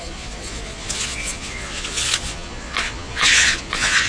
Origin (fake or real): fake